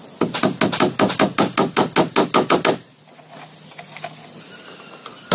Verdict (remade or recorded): recorded